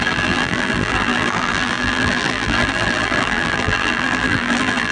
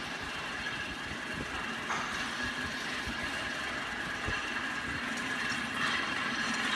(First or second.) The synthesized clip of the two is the first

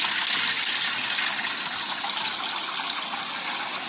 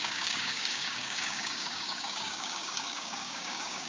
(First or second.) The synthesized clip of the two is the second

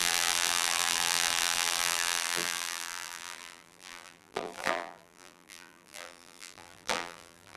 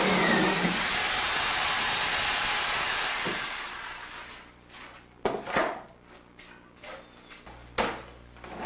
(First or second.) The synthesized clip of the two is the first